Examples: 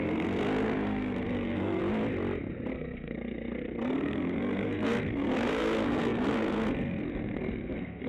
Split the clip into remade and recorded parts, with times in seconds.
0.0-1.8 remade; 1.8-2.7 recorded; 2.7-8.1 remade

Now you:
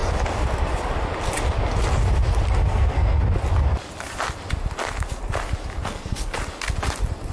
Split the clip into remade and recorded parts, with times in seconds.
0.0-2.6 recorded; 2.6-3.2 remade; 3.2-5.8 recorded; 5.8-6.4 remade; 6.4-7.3 recorded

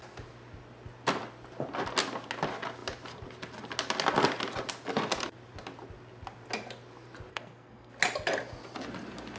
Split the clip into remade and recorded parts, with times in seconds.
0.0-7.3 recorded; 7.3-7.9 remade; 7.9-9.4 recorded

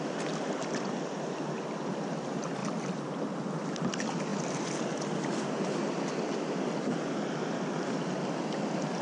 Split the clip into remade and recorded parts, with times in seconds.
0.0-9.0 recorded